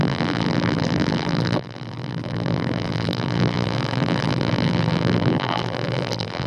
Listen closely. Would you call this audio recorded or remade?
remade